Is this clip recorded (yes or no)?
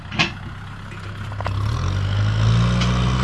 yes